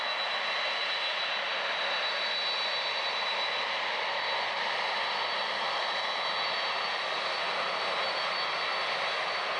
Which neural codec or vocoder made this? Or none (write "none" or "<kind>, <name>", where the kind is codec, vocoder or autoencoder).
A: none